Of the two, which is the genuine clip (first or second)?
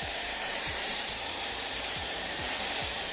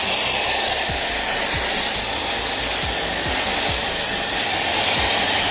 second